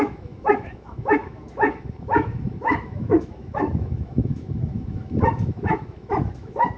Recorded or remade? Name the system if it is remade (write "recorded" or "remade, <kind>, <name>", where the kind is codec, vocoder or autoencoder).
remade, autoencoder, DAC-VAE